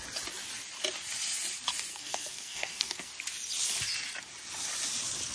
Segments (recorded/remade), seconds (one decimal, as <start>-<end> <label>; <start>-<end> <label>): 0.0-1.9 recorded; 1.9-3.1 remade; 3.1-5.3 recorded